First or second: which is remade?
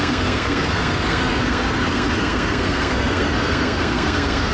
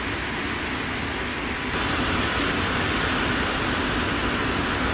first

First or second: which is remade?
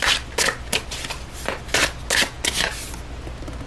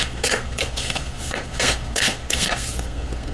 second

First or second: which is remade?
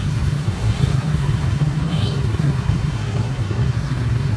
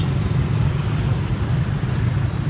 first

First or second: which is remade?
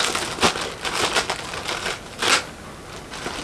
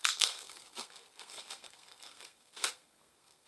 second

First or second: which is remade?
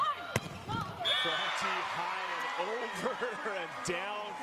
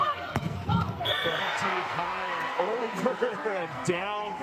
second